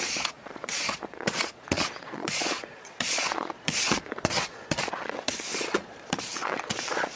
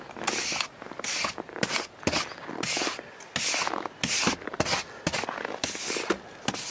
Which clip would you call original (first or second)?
second